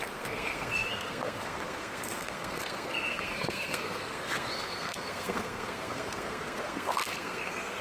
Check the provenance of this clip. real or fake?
fake